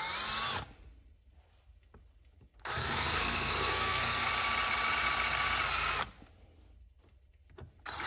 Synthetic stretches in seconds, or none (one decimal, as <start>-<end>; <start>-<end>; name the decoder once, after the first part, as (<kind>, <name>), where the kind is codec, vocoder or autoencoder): 2.8-4.3 (codec, SNAC)